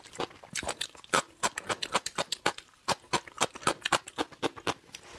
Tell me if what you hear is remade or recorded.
recorded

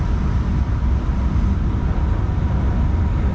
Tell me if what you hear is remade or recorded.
recorded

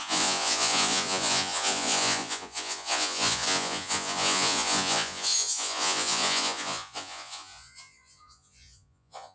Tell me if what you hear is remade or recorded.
remade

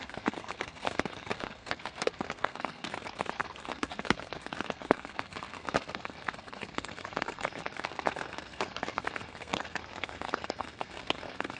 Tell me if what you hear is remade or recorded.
remade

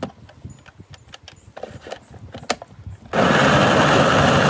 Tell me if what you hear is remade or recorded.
recorded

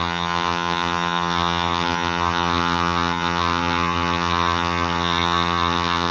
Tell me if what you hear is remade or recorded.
remade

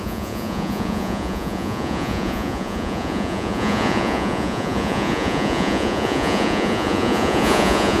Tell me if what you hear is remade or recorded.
remade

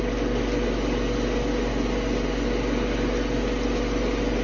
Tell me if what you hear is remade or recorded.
recorded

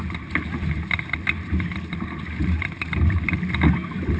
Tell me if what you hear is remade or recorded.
recorded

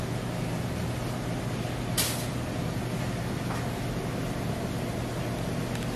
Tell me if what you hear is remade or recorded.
recorded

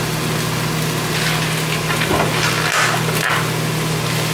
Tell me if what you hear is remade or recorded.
recorded